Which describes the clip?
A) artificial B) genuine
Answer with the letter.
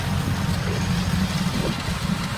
B